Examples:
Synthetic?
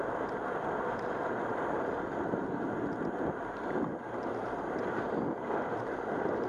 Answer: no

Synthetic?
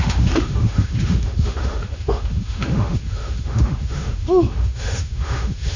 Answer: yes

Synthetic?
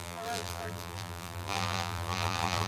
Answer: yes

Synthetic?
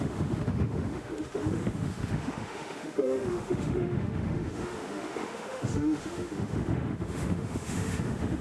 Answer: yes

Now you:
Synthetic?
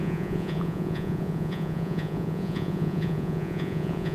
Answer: yes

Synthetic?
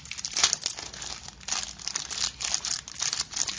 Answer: no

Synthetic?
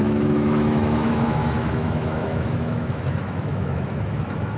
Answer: yes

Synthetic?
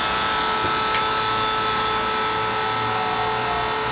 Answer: no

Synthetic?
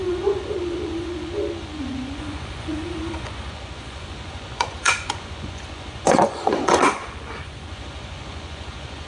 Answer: yes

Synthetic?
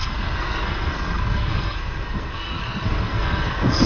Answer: yes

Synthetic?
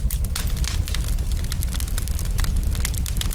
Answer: no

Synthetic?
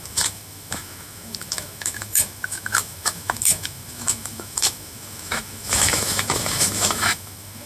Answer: yes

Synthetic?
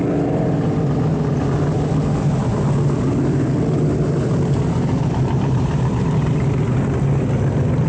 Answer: no